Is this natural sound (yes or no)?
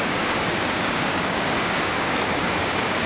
no